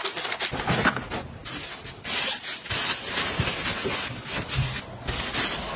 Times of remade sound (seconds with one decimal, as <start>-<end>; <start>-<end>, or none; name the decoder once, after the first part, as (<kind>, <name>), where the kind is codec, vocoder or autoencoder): none